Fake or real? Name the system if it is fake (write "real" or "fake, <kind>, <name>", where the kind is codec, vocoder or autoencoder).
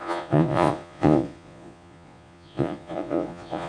fake, vocoder, Vocos